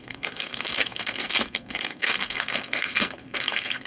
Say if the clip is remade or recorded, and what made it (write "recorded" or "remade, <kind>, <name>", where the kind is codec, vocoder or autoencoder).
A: remade, codec, SNAC